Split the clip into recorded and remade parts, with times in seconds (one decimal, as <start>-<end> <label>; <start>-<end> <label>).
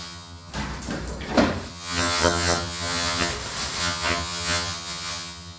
0.0-0.5 remade; 0.5-1.7 recorded; 1.7-3.3 remade; 3.3-3.8 recorded; 3.8-5.6 remade